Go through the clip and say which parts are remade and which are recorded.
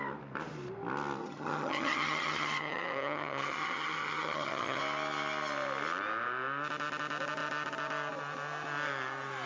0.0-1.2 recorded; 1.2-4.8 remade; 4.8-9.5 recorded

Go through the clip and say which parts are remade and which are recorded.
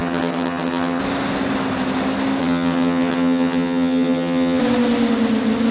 0.0-1.0 remade; 1.0-2.4 recorded; 2.4-4.6 remade; 4.6-5.7 recorded